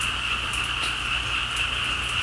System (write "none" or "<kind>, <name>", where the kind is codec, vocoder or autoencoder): none